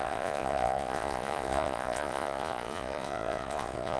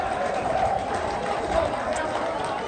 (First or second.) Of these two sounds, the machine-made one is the first